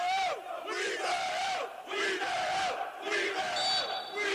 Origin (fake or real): real